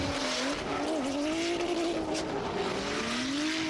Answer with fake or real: real